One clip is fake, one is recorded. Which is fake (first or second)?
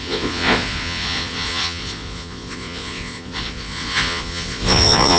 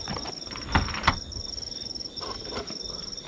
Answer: first